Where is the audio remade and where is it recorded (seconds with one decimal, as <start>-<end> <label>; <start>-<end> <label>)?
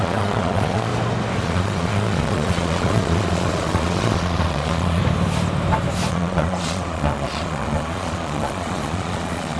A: 0.0-0.9 remade; 0.9-1.4 recorded; 1.4-5.0 remade; 5.0-6.1 recorded; 6.1-9.6 remade